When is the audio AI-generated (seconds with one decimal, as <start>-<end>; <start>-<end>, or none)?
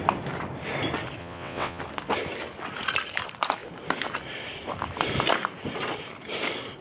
1.2-1.8